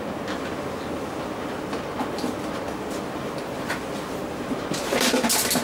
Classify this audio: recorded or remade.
recorded